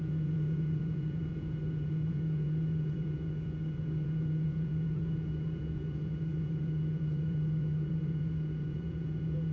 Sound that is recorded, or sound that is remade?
remade